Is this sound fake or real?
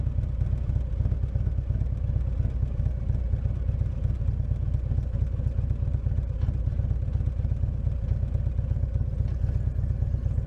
real